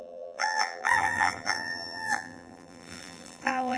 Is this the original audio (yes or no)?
no